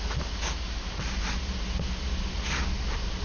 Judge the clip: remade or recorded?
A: recorded